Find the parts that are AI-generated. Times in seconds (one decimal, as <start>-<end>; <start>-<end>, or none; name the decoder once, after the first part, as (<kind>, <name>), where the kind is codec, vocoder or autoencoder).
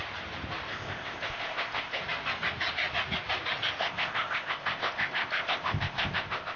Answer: 0.7-2.0 (codec, ZipCodec); 3.8-6.6